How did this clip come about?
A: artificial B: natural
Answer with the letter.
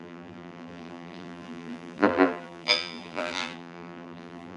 A